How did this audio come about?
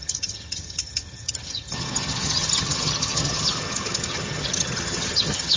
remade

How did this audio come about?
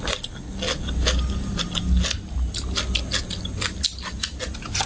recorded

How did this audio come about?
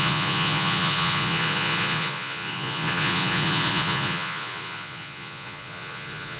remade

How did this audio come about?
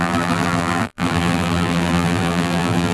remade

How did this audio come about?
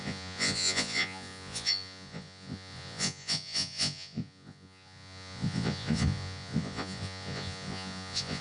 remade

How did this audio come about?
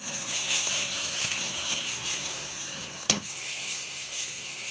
remade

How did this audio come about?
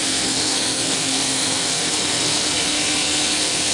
remade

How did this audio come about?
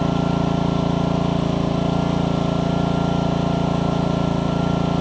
recorded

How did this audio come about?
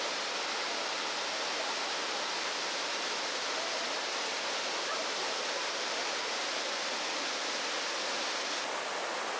recorded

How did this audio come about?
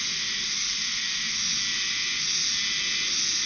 recorded